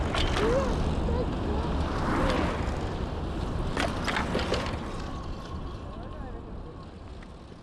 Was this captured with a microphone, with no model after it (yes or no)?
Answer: yes